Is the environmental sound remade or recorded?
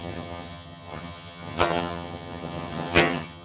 remade